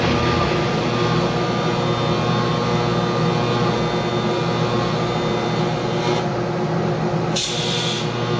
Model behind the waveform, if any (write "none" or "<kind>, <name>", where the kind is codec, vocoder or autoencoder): none